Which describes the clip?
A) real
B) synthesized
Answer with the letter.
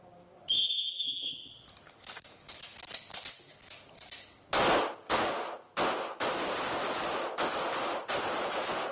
A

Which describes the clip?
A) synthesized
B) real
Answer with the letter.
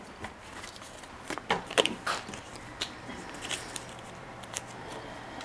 A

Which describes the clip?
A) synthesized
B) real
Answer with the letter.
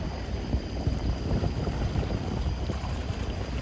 A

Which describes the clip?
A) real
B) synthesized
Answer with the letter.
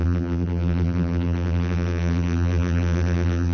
B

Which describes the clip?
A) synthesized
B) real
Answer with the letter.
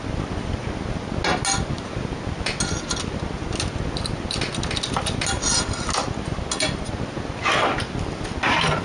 B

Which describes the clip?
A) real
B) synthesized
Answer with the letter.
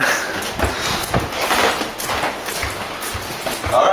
A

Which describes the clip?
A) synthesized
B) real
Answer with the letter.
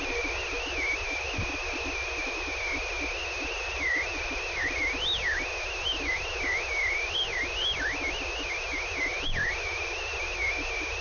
B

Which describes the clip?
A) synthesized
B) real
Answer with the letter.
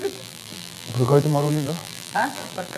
A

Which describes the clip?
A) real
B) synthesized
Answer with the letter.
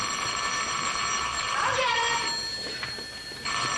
B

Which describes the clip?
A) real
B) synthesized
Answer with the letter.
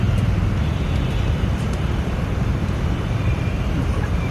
B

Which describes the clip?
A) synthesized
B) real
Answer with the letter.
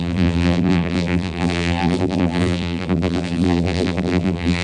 A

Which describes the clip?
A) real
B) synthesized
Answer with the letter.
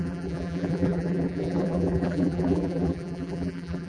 B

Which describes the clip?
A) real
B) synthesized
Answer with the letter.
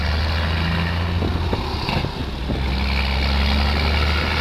A